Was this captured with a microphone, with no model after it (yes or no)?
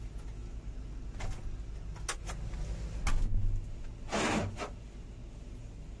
yes